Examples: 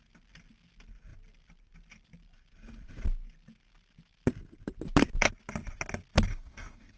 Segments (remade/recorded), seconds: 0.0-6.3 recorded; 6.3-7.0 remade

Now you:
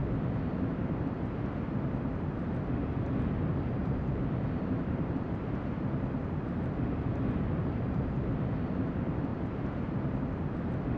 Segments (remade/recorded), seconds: 0.0-3.8 recorded; 3.8-8.2 remade; 8.2-9.3 recorded; 9.3-10.2 remade; 10.2-11.0 recorded

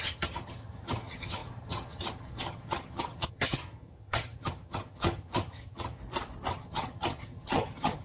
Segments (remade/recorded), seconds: 0.0-6.0 remade; 6.0-6.5 recorded; 6.5-8.0 remade

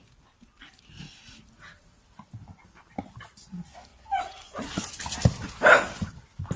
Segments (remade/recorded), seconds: 0.0-3.9 recorded; 3.9-5.0 remade; 5.0-6.6 recorded

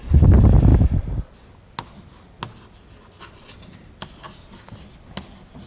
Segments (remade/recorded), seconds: 0.0-5.7 recorded